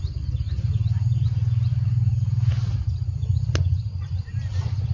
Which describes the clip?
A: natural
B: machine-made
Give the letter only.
A